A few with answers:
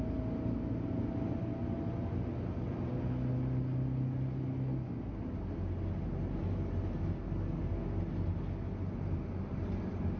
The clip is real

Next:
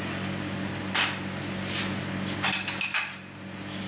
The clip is real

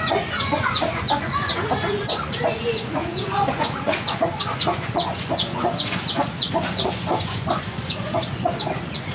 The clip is fake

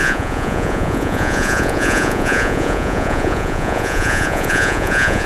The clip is fake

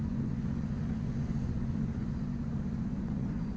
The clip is fake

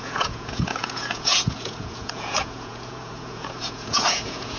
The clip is fake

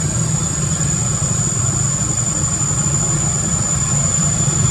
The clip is real